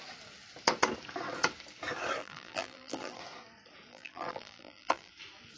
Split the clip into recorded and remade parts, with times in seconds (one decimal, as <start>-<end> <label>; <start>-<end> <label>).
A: 0.0-2.2 recorded; 2.2-3.2 remade; 3.2-3.9 recorded; 3.9-5.1 remade; 5.1-5.6 recorded